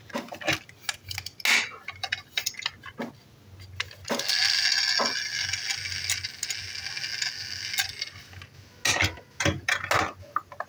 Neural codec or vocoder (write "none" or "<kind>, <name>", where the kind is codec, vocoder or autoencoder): none